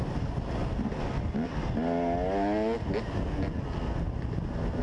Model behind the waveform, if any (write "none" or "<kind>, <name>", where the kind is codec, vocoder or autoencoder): none